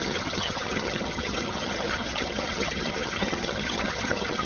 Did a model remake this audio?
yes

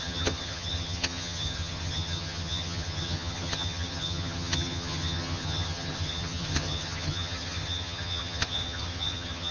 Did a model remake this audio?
yes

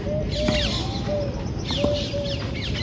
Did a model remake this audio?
no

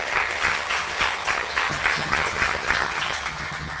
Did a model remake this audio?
yes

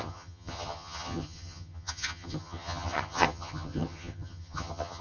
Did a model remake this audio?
yes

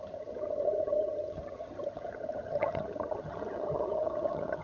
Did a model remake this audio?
yes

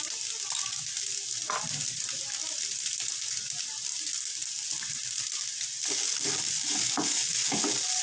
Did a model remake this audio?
no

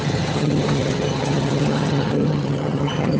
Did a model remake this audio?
yes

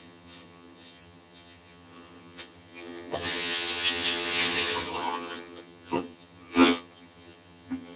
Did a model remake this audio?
yes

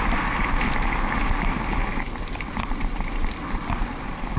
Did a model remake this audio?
no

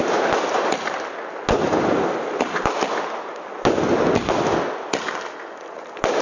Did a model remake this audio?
no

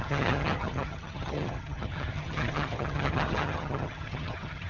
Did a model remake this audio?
yes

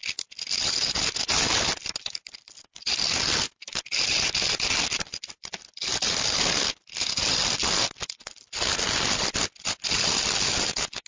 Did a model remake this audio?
no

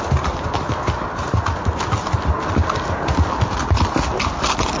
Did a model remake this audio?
no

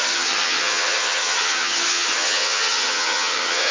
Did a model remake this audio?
yes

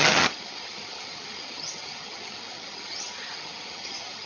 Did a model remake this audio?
yes